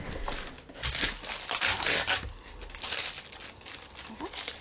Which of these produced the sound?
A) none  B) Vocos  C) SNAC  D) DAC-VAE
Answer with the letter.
A